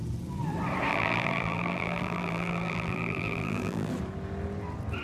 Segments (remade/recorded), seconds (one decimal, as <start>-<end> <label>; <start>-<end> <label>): 0.0-0.9 recorded; 0.9-3.9 remade; 3.9-5.0 recorded